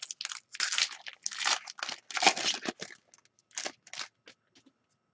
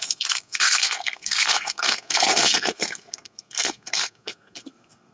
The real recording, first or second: first